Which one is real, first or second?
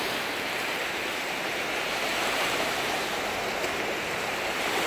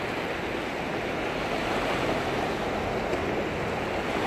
second